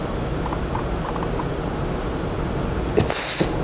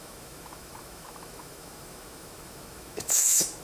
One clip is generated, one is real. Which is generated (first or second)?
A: second